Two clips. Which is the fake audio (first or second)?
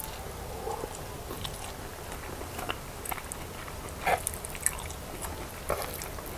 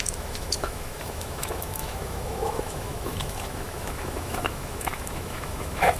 second